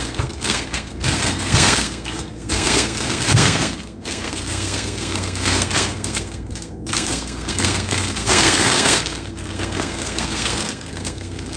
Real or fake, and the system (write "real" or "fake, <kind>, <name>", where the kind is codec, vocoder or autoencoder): fake, codec, SNAC